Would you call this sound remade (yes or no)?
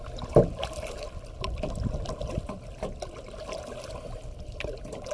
no